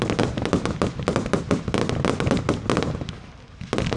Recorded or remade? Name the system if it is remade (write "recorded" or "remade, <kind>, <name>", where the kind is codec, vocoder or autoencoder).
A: recorded